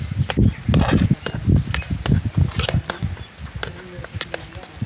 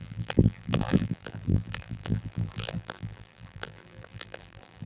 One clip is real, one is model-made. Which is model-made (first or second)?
second